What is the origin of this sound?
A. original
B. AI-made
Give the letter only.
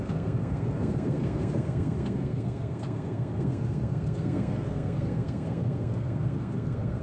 B